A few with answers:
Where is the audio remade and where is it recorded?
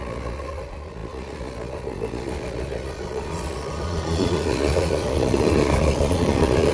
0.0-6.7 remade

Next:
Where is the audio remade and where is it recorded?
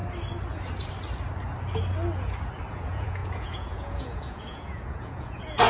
0.0-2.7 recorded; 2.7-5.7 remade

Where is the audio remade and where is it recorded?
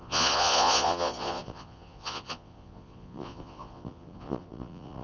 0.0-5.0 remade